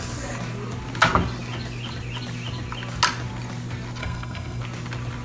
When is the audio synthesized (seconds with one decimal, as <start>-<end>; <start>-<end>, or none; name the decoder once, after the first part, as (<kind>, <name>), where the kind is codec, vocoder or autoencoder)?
4.0-4.6 (codec, SNAC)